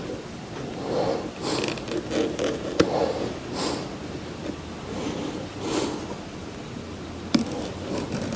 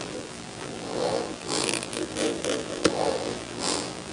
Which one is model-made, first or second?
second